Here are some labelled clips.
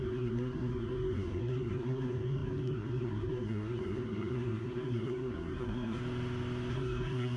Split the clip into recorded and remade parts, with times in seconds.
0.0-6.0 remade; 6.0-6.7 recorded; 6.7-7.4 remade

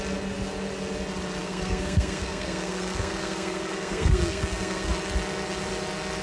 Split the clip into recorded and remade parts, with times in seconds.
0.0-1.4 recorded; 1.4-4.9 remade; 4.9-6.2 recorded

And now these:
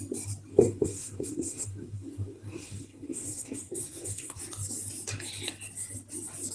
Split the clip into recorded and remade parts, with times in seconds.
0.0-0.5 recorded; 0.5-4.4 remade; 4.4-6.5 recorded